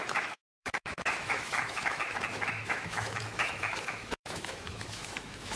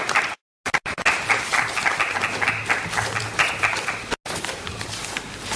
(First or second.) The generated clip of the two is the first